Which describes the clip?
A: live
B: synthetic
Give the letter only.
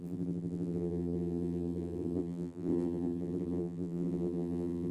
B